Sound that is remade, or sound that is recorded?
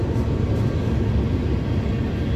recorded